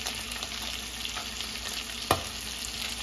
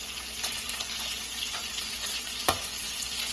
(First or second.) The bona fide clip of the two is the first